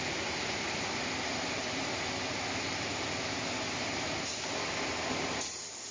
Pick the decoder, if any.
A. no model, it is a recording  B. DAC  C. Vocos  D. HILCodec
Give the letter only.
A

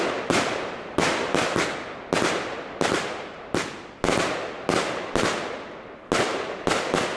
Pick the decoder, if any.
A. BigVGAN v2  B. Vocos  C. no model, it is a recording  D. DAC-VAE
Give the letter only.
C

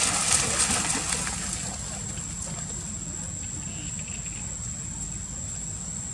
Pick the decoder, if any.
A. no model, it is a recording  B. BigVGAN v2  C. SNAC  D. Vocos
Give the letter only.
A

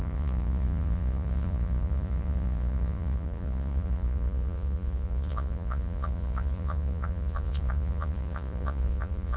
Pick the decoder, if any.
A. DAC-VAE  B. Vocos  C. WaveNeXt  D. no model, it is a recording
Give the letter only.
B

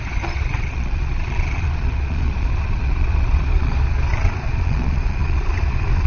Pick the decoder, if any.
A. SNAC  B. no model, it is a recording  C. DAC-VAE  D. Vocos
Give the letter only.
D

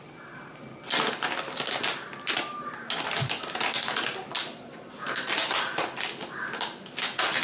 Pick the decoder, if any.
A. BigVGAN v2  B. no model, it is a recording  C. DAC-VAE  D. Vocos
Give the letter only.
B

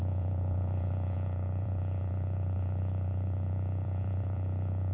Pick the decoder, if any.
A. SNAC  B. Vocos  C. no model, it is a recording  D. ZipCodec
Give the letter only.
B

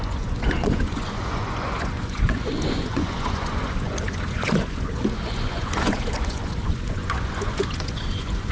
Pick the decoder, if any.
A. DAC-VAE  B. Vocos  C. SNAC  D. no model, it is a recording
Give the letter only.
B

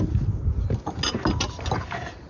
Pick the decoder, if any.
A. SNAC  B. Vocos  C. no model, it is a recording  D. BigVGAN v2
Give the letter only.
C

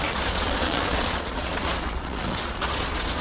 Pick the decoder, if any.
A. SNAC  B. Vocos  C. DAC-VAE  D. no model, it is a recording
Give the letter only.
B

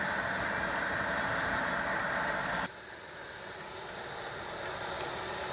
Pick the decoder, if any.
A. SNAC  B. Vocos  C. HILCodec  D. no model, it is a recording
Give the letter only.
D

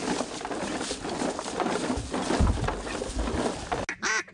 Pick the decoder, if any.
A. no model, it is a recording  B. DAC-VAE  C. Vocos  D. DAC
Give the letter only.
A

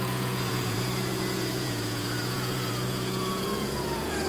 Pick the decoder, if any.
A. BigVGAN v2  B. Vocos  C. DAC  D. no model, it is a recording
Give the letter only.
B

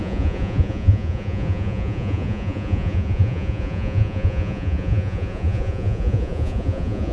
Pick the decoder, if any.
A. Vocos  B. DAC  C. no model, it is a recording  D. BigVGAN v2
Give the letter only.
A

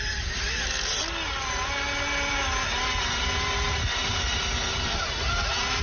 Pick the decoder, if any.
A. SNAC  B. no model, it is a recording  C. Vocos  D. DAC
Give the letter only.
B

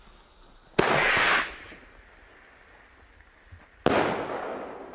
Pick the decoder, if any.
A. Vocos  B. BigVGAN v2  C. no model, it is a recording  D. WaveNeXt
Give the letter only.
C